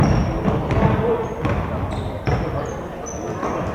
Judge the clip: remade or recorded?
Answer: recorded